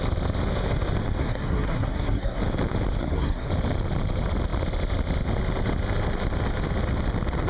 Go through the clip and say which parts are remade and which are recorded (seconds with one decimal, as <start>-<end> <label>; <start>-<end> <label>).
0.0-1.2 recorded; 1.2-2.4 remade; 2.4-3.0 recorded; 3.0-3.5 remade; 3.5-7.5 recorded